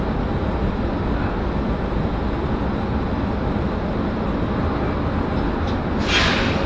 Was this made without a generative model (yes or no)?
yes